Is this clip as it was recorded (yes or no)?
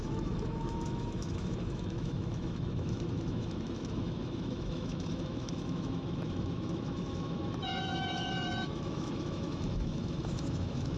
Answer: no